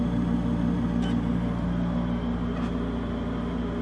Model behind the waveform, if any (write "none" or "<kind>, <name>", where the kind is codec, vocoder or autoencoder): none